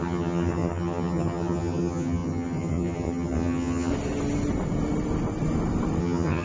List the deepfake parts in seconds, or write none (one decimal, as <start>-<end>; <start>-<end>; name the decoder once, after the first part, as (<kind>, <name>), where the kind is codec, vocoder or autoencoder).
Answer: 0.0-3.9 (vocoder, HiFi-GAN); 6.0-6.4